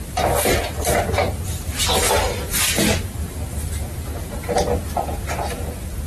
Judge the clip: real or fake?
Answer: real